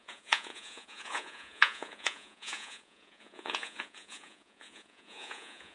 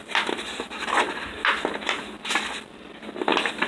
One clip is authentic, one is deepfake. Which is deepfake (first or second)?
first